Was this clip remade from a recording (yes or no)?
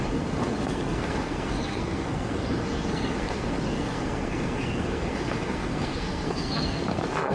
yes